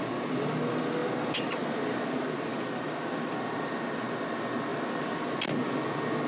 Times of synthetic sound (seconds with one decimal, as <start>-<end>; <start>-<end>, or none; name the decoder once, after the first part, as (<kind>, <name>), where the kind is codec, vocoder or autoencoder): 4.7-5.2 (vocoder, BigVGAN v2)